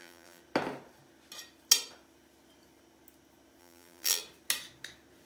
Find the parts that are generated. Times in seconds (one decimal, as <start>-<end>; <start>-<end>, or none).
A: 0.0-0.4; 3.6-4.2